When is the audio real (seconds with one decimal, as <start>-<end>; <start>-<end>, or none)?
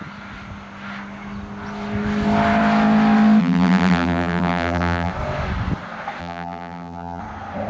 0.0-3.4; 5.1-6.2; 7.2-7.7